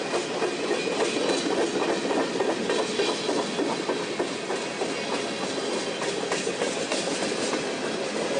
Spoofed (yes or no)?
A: no